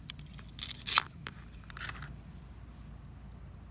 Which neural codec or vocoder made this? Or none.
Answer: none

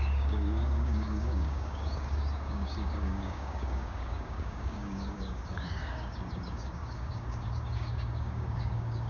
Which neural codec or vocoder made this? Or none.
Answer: codec, DAC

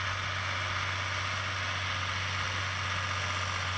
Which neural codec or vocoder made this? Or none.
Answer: none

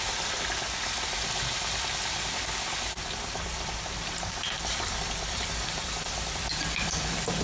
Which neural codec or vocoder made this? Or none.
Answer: vocoder, BigVGAN v2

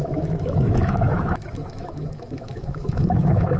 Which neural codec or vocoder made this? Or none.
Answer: autoencoder, DAC-VAE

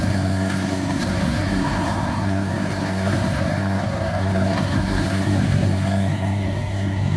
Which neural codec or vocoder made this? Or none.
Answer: codec, SNAC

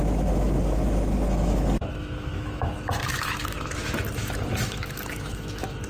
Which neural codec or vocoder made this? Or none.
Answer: autoencoder, DAC-VAE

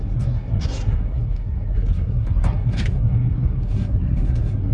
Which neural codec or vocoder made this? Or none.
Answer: codec, SNAC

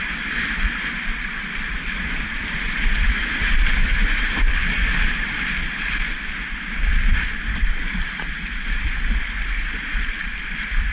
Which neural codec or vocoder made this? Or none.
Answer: vocoder, BigVGAN v2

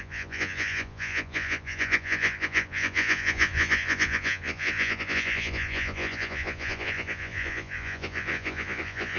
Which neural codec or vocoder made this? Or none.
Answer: vocoder, Vocos